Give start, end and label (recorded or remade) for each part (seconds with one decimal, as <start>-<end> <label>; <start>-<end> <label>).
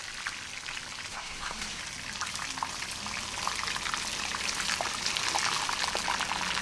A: 0.0-1.1 recorded; 1.1-1.8 remade; 1.8-6.6 recorded